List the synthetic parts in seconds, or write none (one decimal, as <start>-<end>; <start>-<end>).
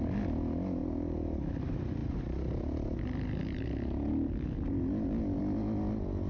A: none